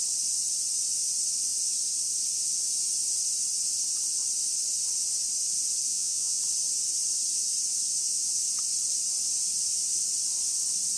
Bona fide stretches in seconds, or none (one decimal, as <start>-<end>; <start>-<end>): 0.0-5.9; 6.4-11.0